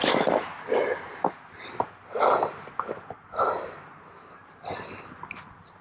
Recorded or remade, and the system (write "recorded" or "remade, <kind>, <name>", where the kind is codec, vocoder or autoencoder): recorded